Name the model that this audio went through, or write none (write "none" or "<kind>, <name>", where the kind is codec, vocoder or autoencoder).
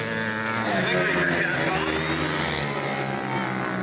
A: none